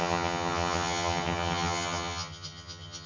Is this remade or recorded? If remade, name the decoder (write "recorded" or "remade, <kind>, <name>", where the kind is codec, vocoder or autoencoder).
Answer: remade, vocoder, HiFi-GAN